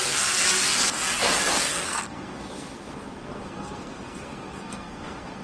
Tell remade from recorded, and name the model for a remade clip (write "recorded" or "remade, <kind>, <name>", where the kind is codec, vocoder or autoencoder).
remade, codec, SNAC